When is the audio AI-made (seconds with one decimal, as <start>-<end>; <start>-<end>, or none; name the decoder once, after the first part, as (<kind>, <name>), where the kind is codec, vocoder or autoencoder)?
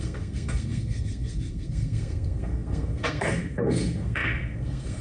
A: 0.0-5.0 (codec, SNAC)